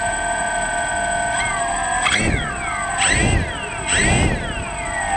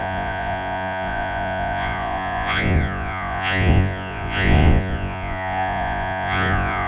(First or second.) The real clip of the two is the first